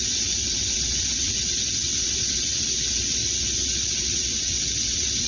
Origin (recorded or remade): remade